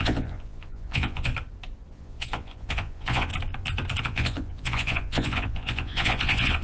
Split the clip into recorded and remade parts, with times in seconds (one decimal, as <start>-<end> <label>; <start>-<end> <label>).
0.0-1.3 remade; 1.3-1.9 recorded; 1.9-3.3 remade; 3.3-4.0 recorded; 4.0-6.6 remade